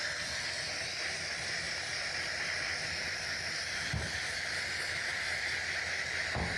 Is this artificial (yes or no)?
no